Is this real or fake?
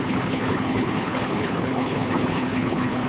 fake